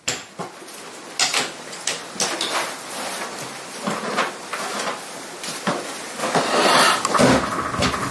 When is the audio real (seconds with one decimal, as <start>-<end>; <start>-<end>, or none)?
0.0-8.1